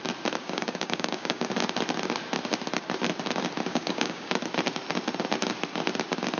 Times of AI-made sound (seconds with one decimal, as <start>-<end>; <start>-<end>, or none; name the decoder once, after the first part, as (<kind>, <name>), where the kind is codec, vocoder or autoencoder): 0.4-1.5 (codec, DAC); 3.7-4.3